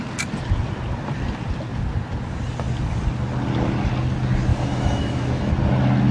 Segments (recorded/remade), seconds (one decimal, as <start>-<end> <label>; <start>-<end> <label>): 0.0-4.5 recorded; 4.5-5.5 remade; 5.5-6.1 recorded